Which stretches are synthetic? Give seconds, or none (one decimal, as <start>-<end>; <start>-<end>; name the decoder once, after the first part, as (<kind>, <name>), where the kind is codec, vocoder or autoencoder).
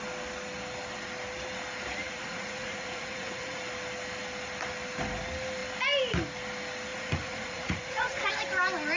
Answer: 2.0-3.6 (vocoder, Vocos); 6.9-8.3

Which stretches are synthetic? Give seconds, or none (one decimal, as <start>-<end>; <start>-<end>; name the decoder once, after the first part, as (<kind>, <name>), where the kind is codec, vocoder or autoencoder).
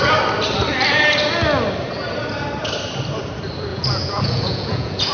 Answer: 3.7-5.1 (vocoder, Vocos)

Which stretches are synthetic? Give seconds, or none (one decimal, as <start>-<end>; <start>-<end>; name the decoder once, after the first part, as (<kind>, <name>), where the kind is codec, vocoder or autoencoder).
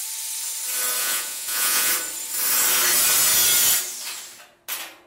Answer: 1.0-1.9 (vocoder, Vocos)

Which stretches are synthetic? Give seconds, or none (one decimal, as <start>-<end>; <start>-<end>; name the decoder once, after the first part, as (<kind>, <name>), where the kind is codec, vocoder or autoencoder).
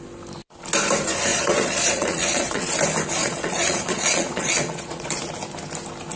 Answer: 1.3-2.7 (vocoder, Vocos); 3.2-5.3